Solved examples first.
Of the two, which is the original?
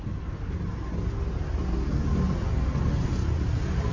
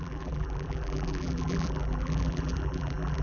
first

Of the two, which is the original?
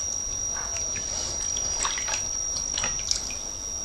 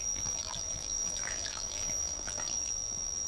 first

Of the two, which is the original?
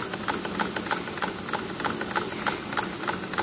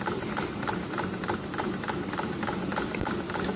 first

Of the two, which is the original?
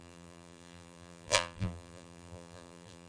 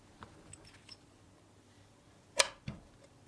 second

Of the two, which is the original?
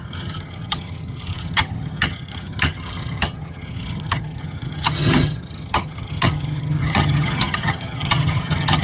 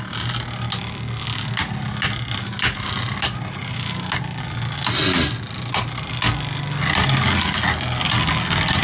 second